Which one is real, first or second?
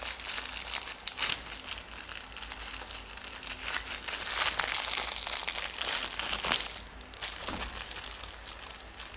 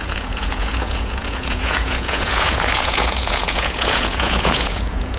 first